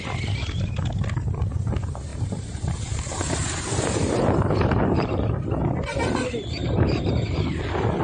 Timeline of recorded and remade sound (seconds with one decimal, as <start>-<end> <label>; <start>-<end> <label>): 0.0-2.1 recorded; 2.1-5.3 remade; 5.3-6.6 recorded; 6.6-7.2 remade; 7.2-8.0 recorded